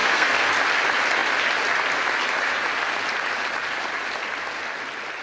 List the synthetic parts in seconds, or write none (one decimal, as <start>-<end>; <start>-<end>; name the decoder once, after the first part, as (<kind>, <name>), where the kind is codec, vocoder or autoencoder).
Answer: 0.0-0.5 (codec, SNAC)